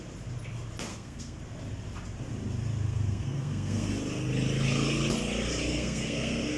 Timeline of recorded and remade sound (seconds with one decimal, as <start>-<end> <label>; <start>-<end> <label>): 0.0-0.9 recorded; 0.9-1.4 remade; 1.4-2.9 recorded; 2.9-3.9 remade; 3.9-5.7 recorded; 5.7-6.6 remade